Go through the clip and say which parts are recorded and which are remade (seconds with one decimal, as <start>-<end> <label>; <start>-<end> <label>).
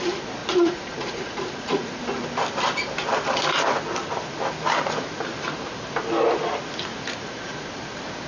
0.0-0.4 recorded; 0.4-2.0 remade; 2.0-6.9 recorded; 6.9-7.6 remade; 7.6-8.3 recorded